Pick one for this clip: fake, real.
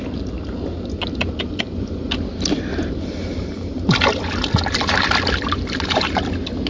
real